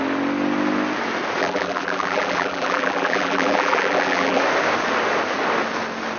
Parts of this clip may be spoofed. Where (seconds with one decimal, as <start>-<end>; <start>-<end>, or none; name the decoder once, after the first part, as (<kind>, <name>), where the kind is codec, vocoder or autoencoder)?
1.4-4.4 (vocoder, BigVGAN v2)